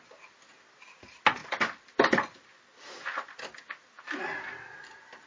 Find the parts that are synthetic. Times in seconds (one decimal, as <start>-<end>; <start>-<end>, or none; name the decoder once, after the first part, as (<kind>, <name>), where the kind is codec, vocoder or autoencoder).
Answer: none